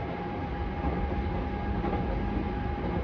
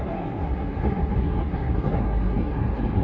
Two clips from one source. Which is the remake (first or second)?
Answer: second